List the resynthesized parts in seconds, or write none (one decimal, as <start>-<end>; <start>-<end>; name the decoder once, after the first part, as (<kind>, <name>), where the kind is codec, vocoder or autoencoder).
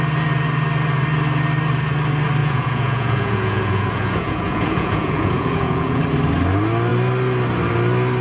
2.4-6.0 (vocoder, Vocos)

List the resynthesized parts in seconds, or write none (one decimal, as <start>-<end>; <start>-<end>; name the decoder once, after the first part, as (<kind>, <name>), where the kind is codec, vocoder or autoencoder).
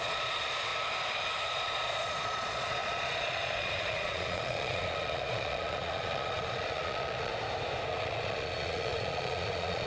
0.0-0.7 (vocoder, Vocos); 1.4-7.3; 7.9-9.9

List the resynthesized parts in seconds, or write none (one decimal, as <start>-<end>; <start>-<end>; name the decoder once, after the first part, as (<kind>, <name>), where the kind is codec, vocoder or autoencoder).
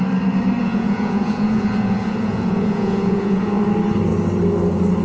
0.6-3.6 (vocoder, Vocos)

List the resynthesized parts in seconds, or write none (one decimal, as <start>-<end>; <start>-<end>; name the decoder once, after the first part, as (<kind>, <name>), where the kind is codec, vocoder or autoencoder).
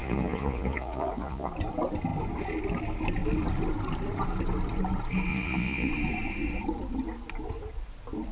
0.0-1.5 (vocoder, Vocos); 5.3-5.9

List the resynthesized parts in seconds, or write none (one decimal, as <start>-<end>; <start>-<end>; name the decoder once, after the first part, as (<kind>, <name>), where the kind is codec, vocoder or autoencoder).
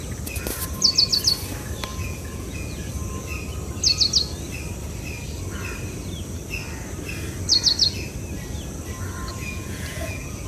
1.9-2.9 (vocoder, Vocos); 9.3-10.5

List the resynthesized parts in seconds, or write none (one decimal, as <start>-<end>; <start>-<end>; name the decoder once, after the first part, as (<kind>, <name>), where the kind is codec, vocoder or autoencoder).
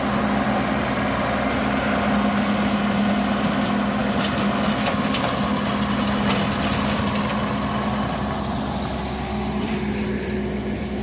none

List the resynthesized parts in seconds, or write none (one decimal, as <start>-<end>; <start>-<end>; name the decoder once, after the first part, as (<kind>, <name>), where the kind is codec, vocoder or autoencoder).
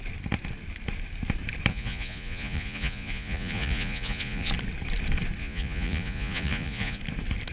1.7-4.5 (vocoder, Vocos); 5.4-7.0